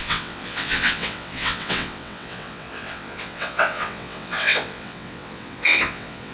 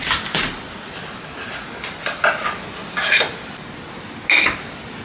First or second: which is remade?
first